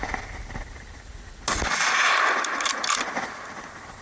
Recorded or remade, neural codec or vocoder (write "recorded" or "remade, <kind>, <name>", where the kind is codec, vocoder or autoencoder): recorded